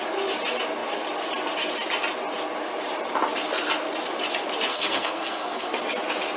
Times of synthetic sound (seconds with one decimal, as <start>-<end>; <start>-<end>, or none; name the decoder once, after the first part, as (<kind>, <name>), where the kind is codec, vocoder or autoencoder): 4.7-5.7 (codec, SNAC)